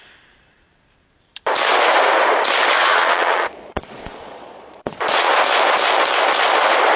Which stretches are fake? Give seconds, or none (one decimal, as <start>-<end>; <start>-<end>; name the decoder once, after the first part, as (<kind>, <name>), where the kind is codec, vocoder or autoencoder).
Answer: 2.8-5.3 (vocoder, Vocos)